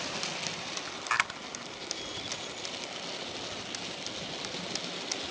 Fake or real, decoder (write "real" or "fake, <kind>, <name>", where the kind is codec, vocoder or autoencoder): real